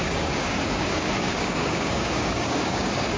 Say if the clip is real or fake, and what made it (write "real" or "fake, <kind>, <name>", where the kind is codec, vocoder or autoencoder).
fake, codec, DAC